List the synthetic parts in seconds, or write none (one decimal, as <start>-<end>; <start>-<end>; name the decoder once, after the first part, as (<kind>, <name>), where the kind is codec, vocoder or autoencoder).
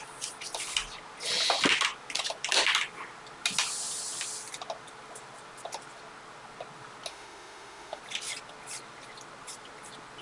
7.1-8.0 (autoencoder, DAC-VAE)